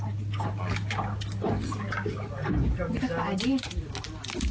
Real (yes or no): yes